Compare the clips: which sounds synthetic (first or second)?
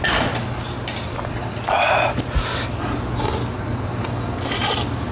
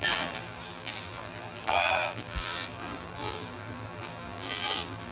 second